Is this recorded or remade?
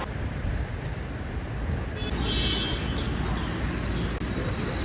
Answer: recorded